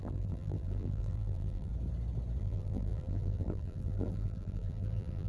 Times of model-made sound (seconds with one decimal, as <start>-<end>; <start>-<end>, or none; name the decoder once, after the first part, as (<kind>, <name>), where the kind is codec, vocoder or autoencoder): 0.0-1.7 (vocoder, BigVGAN v2); 2.4-5.3